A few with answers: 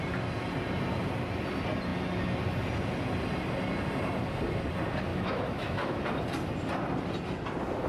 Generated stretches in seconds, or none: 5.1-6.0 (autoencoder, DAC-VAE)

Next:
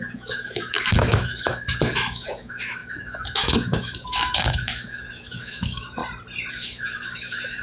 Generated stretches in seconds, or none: 0.0-6.0 (autoencoder, DAC-VAE); 6.5-7.6

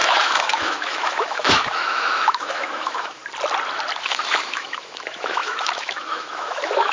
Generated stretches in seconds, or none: 0.0-3.2 (autoencoder, DAC-VAE); 4.0-6.9

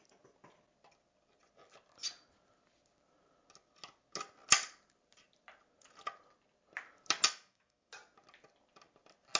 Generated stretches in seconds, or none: 7.3-7.9 (autoencoder, DAC-VAE)

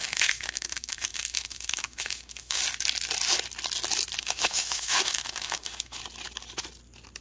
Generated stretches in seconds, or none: 0.0-2.6 (autoencoder, DAC-VAE); 4.2-6.0

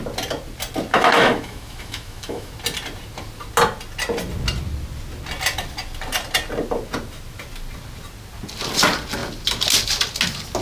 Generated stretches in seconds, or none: 0.9-2.5 (autoencoder, DAC-VAE)